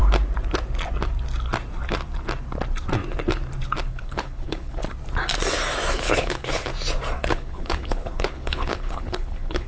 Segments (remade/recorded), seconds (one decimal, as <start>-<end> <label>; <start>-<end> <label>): 0.0-3.9 recorded; 3.9-4.8 remade; 4.8-5.9 recorded; 5.9-6.7 remade; 6.7-7.3 recorded; 7.3-9.7 remade